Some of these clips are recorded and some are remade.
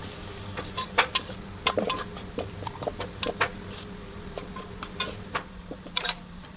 remade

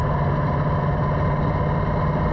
recorded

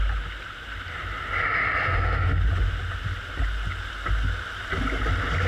recorded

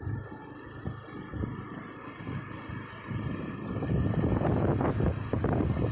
recorded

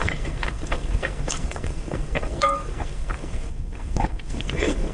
remade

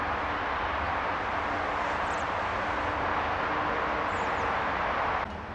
recorded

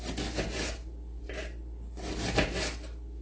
recorded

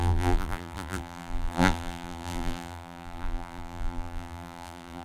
remade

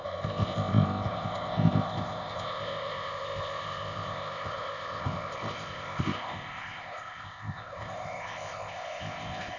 remade